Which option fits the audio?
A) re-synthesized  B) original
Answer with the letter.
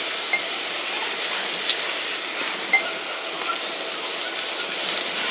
B